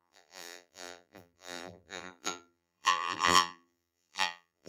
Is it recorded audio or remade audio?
remade